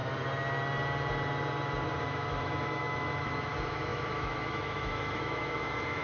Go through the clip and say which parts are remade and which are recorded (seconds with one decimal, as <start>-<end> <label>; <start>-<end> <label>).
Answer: 0.0-2.0 recorded; 2.0-6.0 remade